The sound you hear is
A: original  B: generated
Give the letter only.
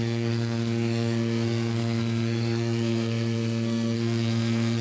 B